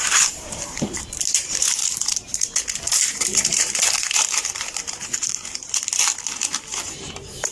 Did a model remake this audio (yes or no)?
yes